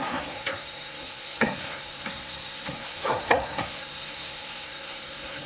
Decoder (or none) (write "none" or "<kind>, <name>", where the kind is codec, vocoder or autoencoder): codec, SNAC